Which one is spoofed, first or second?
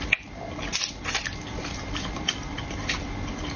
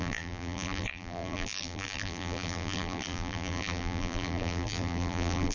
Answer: second